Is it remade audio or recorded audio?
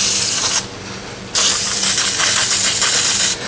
recorded